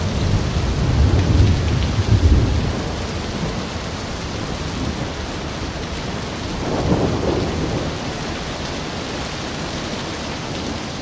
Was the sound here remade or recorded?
recorded